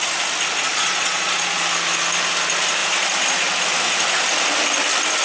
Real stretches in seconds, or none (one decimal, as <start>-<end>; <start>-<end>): 0.0-0.7; 1.6-5.2